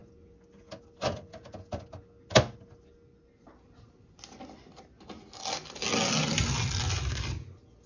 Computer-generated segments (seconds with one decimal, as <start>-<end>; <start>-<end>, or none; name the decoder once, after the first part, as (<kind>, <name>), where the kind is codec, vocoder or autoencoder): none